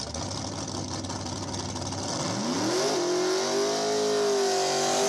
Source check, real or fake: real